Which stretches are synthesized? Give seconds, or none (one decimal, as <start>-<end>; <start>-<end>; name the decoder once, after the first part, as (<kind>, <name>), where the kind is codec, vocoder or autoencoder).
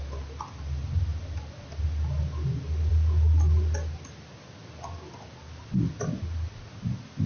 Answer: none